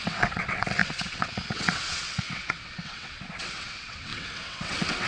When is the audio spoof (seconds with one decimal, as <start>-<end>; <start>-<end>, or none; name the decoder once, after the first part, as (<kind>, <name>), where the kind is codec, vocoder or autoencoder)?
0.0-5.1 (vocoder, WaveNeXt)